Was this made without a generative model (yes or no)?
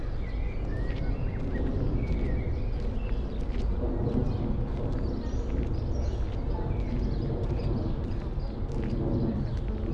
yes